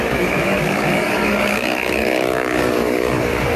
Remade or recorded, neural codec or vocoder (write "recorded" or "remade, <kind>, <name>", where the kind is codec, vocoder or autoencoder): remade, codec, DAC